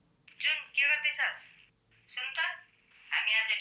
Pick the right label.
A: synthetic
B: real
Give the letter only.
B